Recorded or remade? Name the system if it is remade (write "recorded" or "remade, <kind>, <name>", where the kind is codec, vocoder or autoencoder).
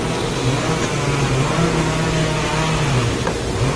recorded